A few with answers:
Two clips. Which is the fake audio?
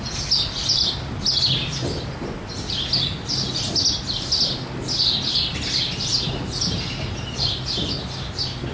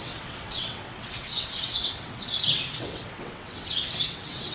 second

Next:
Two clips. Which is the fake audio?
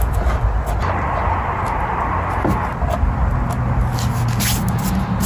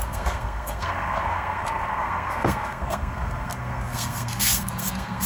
second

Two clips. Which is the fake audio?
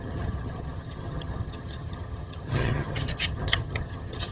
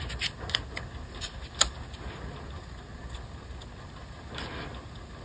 first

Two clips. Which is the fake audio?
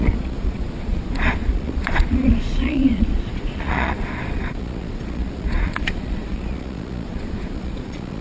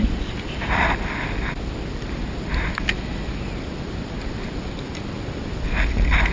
first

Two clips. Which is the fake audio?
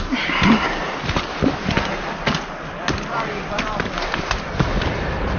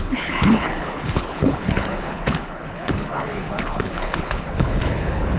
second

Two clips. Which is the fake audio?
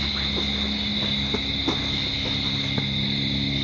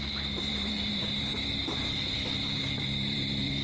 second